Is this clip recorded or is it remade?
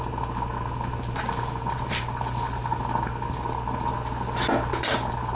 recorded